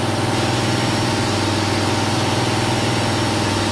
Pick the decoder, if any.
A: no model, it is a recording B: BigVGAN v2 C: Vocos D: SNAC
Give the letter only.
A